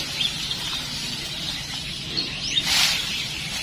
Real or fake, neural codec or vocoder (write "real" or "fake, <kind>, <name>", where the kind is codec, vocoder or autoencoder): real